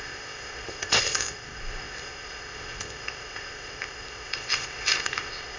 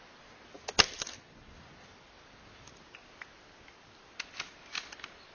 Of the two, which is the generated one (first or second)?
first